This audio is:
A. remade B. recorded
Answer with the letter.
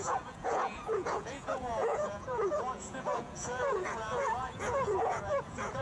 A